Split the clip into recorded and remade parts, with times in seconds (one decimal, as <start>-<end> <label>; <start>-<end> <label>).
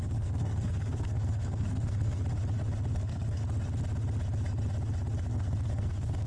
0.0-2.2 remade; 2.2-2.9 recorded; 2.9-3.4 remade; 3.4-5.3 recorded; 5.3-6.3 remade